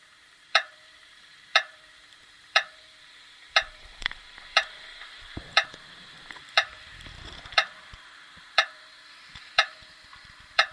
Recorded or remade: remade